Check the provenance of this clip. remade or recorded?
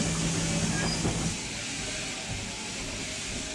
recorded